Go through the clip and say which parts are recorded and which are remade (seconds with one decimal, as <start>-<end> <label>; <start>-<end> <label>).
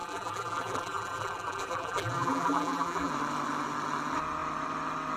0.0-3.1 remade; 3.1-5.2 recorded